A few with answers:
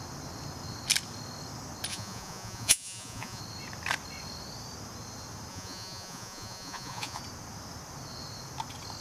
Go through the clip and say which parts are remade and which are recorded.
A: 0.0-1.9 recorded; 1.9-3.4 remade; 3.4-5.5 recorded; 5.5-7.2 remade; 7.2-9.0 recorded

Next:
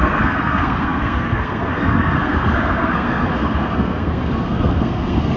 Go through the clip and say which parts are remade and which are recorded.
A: 0.0-5.4 remade

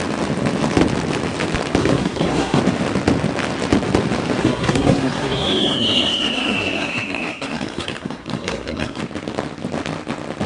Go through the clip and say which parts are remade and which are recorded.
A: 0.0-1.8 recorded; 1.8-2.6 remade; 2.6-4.4 recorded; 4.4-9.0 remade; 9.0-10.5 recorded